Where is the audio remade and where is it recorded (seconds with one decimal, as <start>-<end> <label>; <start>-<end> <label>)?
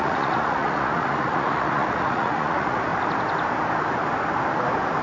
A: 0.0-2.9 remade; 2.9-5.0 recorded